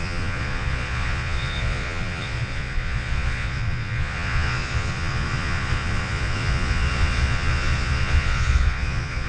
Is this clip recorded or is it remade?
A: remade